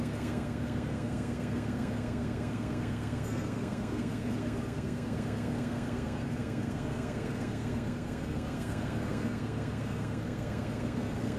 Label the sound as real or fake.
fake